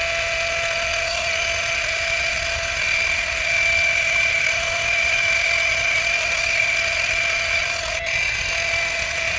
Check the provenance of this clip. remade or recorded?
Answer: recorded